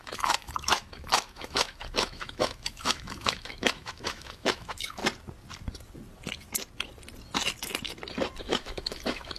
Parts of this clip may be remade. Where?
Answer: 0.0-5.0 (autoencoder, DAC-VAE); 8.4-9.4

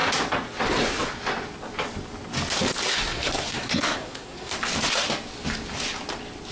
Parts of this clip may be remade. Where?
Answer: 2.9-4.5 (codec, SNAC)

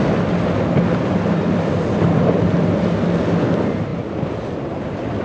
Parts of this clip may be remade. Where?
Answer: 1.0-2.1 (vocoder, BigVGAN v2); 3.9-5.2

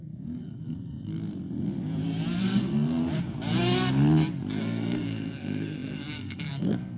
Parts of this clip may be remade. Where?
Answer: 0.0-1.1 (codec, SNAC); 2.4-3.0; 4.6-7.0